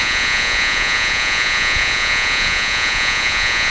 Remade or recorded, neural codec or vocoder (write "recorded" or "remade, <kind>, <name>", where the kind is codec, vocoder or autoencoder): remade, vocoder, Vocos